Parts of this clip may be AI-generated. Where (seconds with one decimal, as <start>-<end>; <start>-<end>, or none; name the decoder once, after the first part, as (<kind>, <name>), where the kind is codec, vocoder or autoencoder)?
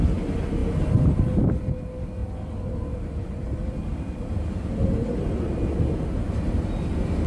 2.2-4.3 (vocoder, BigVGAN v2)